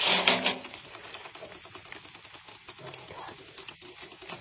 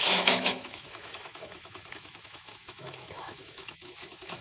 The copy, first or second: second